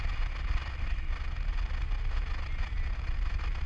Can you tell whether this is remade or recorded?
recorded